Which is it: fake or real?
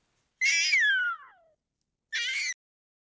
real